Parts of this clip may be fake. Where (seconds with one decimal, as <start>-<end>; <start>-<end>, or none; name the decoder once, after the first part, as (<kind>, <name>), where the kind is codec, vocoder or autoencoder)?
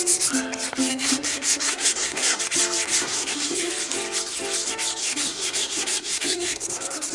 0.9-2.4 (codec, SNAC); 3.0-3.7; 5.0-7.1